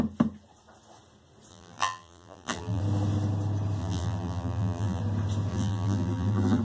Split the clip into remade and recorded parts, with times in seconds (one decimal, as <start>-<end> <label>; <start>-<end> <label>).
0.0-1.5 recorded; 1.5-2.8 remade; 2.8-3.8 recorded; 3.8-5.0 remade; 5.0-5.5 recorded; 5.5-6.6 remade

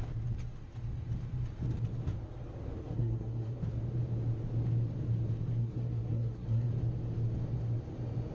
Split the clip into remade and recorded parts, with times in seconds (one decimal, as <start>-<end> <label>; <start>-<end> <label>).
0.0-2.8 recorded; 2.8-3.6 remade; 3.6-5.6 recorded; 5.6-6.7 remade; 6.7-8.3 recorded

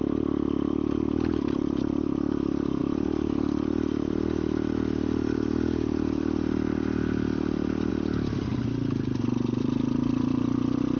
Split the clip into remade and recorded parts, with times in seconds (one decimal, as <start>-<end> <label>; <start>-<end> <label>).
0.0-8.5 remade; 8.5-9.6 recorded; 9.6-11.0 remade

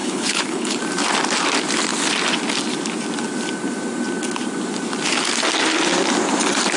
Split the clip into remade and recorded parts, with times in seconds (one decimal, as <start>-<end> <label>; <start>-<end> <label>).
0.0-0.8 remade; 0.8-6.8 recorded

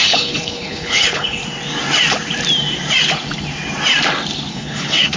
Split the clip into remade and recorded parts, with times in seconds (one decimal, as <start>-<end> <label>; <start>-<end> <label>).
0.0-1.4 remade; 1.4-4.5 recorded; 4.5-5.2 remade

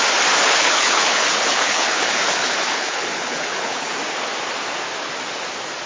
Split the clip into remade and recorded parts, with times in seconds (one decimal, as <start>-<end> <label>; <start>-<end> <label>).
0.0-0.4 recorded; 0.4-3.9 remade; 3.9-5.9 recorded

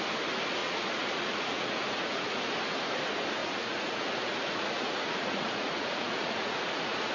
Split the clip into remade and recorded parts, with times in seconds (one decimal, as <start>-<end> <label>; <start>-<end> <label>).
0.0-0.6 recorded; 0.6-2.4 remade; 2.4-3.4 recorded; 3.4-7.1 remade